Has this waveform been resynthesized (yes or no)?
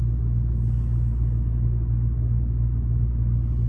no